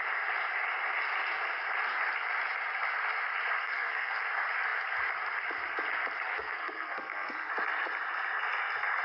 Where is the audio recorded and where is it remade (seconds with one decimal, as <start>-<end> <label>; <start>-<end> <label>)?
0.0-3.6 recorded; 3.6-4.2 remade; 4.2-6.3 recorded; 6.3-7.5 remade; 7.5-9.0 recorded